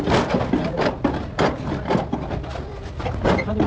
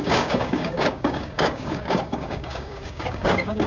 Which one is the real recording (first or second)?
first